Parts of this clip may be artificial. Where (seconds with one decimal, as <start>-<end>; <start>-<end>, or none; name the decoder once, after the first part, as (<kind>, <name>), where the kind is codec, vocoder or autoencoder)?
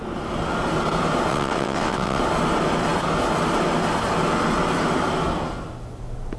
1.3-2.2 (vocoder, WaveNeXt)